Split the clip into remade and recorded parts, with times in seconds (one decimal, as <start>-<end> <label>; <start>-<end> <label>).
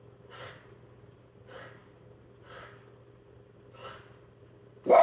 0.0-5.0 recorded